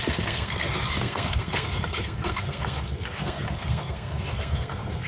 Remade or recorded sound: remade